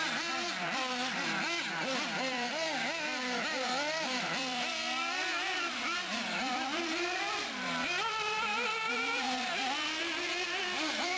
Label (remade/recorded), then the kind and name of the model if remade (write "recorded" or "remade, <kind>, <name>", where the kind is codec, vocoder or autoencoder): remade, vocoder, BigVGAN v2